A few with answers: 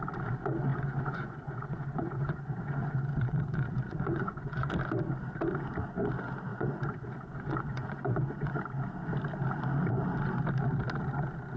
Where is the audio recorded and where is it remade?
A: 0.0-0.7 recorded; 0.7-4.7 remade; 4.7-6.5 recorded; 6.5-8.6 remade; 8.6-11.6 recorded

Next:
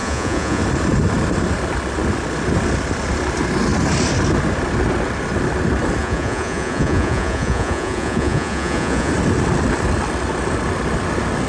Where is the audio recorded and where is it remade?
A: 0.0-0.6 remade; 0.6-6.0 recorded; 6.0-9.1 remade; 9.1-11.5 recorded

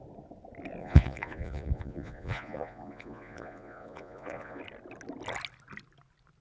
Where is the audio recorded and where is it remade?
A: 0.0-0.8 recorded; 0.8-4.6 remade; 4.6-6.4 recorded